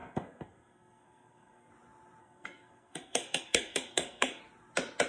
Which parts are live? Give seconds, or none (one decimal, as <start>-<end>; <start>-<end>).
1.7-2.2; 4.4-5.1